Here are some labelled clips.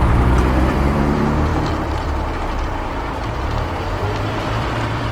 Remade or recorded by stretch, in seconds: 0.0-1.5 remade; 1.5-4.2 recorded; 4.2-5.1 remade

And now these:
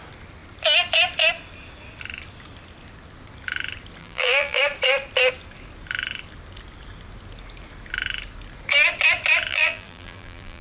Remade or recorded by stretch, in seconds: 0.0-4.0 recorded; 4.0-4.6 remade; 4.6-9.5 recorded; 9.5-10.6 remade

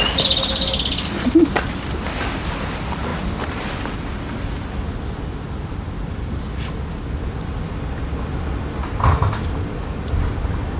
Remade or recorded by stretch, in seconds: 0.0-10.8 recorded

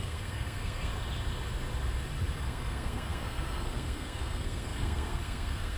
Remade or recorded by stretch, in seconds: 0.0-0.9 remade; 0.9-2.4 recorded; 2.4-5.8 remade

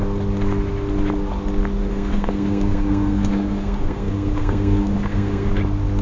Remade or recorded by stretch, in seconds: 0.0-1.9 recorded; 1.9-5.5 remade; 5.5-6.0 recorded

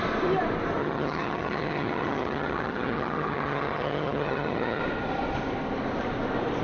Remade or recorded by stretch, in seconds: 0.0-0.8 recorded; 0.8-4.8 remade; 4.8-6.6 recorded

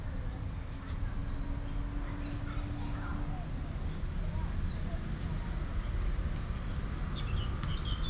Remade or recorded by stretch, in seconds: 0.0-8.1 recorded